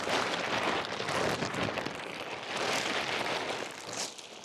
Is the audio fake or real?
real